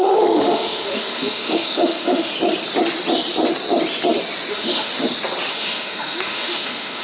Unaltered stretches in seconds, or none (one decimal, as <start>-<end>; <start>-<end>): 2.3-4.5; 4.9-5.5